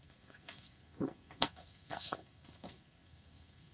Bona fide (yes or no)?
no